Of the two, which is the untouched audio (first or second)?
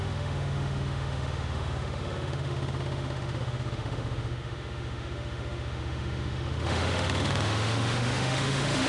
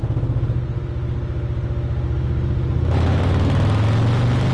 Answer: second